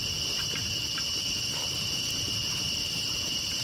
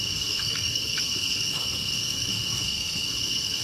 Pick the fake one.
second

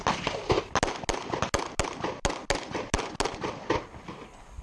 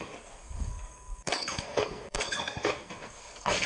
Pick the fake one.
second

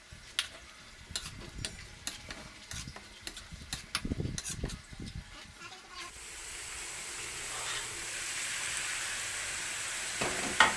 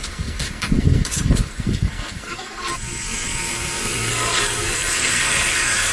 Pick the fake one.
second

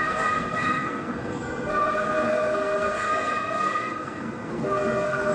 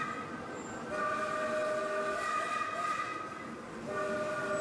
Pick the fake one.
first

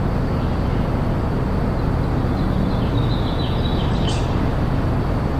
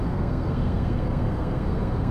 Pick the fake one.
second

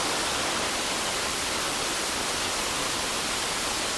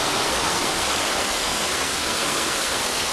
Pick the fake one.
second